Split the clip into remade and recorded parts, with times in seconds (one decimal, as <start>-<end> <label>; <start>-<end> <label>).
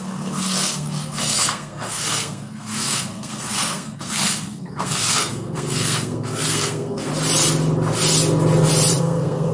0.0-7.1 remade; 7.1-9.0 recorded; 9.0-9.5 remade